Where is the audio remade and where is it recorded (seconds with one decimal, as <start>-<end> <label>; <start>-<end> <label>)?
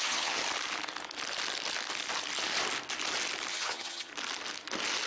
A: 0.0-0.4 remade; 0.4-3.5 recorded; 3.5-4.1 remade; 4.1-5.1 recorded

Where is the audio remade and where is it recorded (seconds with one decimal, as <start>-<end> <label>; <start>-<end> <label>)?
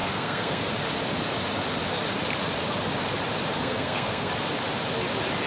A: 0.0-0.7 remade; 0.7-3.6 recorded; 3.6-4.3 remade; 4.3-5.5 recorded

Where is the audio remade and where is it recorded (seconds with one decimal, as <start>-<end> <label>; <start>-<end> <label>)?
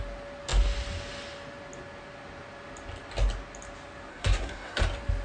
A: 0.0-4.1 recorded; 4.1-4.8 remade; 4.8-5.2 recorded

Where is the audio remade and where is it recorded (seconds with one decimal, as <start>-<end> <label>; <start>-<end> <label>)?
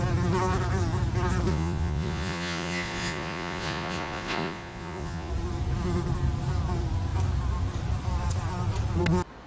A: 0.0-1.5 recorded; 1.5-5.3 remade; 5.3-9.5 recorded